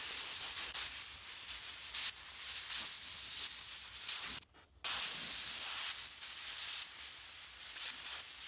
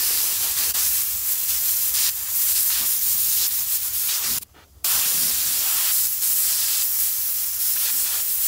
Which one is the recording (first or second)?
first